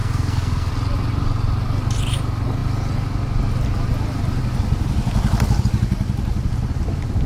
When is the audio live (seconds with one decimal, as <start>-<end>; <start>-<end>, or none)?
0.7-7.3